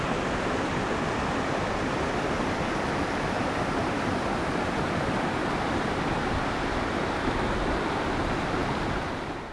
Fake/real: real